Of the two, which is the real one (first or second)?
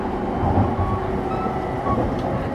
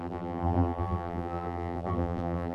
first